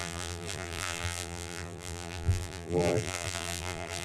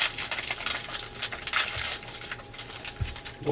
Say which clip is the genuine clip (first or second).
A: second